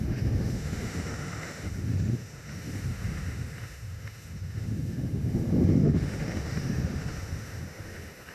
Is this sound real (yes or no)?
no